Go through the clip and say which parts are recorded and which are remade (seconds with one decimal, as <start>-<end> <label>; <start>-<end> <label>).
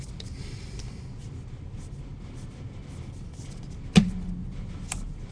0.0-5.3 recorded